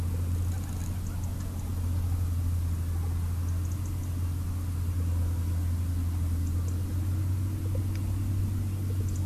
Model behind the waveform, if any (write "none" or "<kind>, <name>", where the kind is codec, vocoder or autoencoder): none